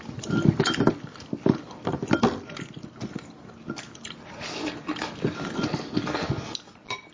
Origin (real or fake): real